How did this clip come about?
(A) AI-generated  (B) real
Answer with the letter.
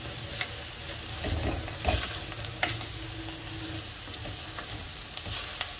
B